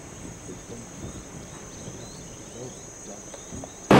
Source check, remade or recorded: remade